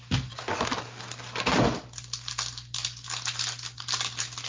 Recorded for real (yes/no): yes